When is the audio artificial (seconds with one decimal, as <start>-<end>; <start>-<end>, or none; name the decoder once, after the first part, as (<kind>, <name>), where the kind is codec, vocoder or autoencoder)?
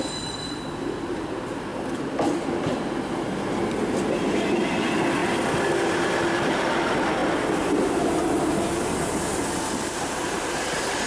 0.0-1.7 (vocoder, BigVGAN v2); 4.1-5.2; 5.7-7.2; 9.9-11.1